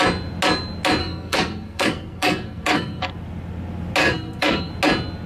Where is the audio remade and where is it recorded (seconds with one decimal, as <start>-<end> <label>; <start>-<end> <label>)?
0.0-1.0 recorded; 1.0-3.1 remade; 3.1-4.0 recorded; 4.0-4.7 remade; 4.7-5.3 recorded